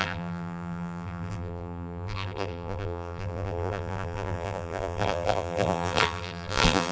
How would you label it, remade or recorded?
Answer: remade